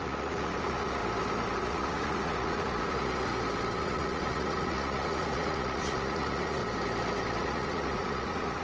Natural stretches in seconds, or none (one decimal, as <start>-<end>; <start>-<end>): 1.0-1.6; 3.3-3.8; 6.6-7.4